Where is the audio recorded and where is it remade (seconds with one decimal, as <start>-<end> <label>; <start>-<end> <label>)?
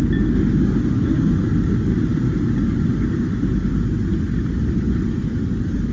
0.0-5.9 recorded